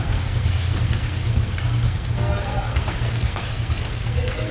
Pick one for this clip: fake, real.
fake